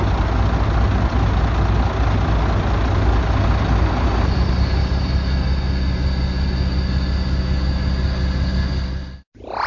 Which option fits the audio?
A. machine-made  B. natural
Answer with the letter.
B